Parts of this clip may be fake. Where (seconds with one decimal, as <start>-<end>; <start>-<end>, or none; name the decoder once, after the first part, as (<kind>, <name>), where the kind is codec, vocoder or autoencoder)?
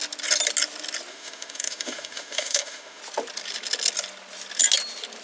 1.1-3.0 (autoencoder, DAC-VAE)